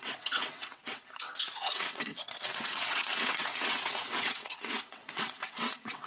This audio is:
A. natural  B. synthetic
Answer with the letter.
B